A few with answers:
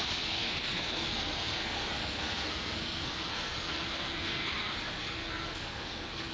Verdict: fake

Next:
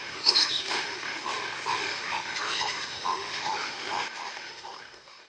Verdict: fake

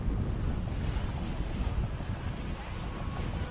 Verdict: real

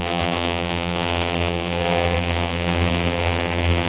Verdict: fake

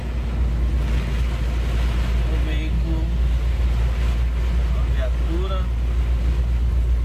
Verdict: real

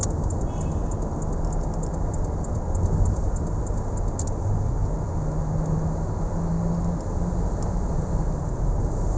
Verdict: real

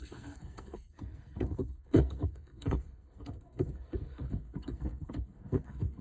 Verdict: fake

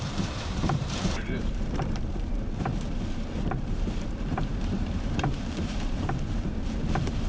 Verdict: fake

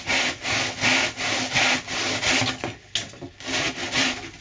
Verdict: real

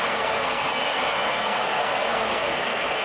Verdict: fake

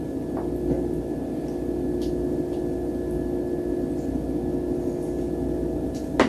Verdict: real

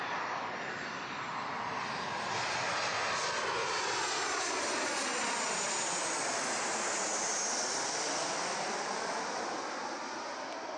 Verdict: real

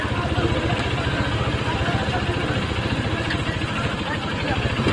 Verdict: real